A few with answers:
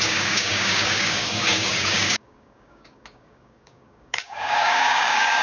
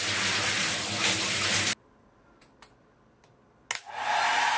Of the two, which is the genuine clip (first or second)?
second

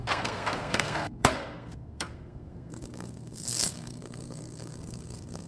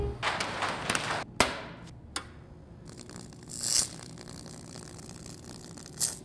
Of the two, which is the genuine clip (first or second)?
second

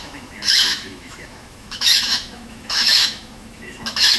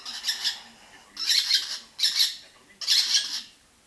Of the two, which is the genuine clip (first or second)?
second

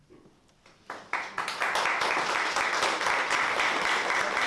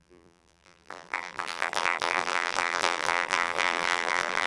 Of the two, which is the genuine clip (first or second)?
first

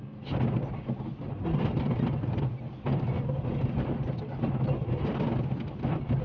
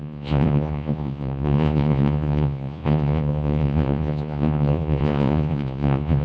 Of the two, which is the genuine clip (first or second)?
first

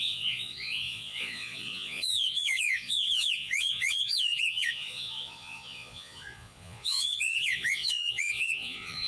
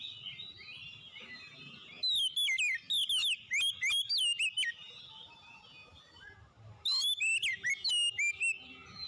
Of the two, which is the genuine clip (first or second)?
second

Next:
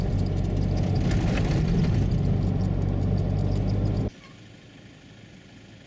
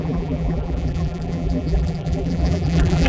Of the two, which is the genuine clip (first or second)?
first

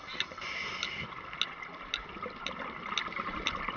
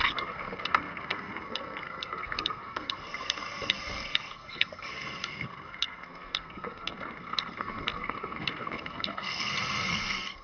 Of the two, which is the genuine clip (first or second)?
first